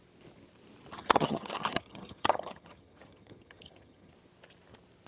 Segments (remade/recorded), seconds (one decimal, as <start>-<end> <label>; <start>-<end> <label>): 0.0-1.0 recorded; 1.0-4.1 remade; 4.1-5.1 recorded

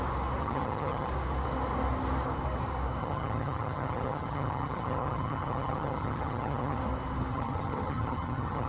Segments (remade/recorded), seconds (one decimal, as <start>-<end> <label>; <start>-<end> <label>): 0.0-0.4 recorded; 0.4-1.1 remade; 1.1-3.0 recorded; 3.0-6.8 remade; 6.8-7.3 recorded; 7.3-8.7 remade